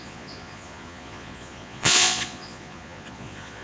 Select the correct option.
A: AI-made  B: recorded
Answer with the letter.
A